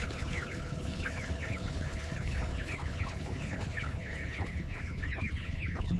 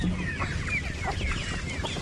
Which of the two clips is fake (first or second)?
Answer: first